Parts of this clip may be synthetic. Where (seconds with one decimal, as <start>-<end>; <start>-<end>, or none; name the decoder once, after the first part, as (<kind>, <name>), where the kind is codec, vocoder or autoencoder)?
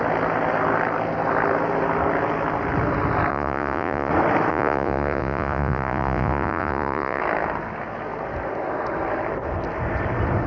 3.3-4.1 (vocoder, Vocos); 4.5-7.2